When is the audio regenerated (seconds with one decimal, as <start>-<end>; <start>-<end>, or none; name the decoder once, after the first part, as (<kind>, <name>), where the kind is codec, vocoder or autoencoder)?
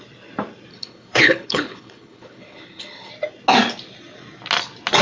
0.7-3.1 (codec, HILCodec)